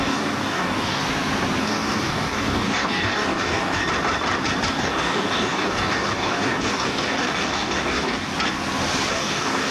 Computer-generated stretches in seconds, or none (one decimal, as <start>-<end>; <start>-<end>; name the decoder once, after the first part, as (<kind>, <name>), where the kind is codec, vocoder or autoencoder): 0.0-1.0 (codec, DAC); 1.6-3.8; 4.7-8.3; 9.1-9.7